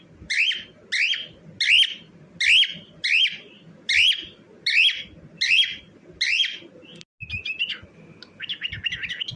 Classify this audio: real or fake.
real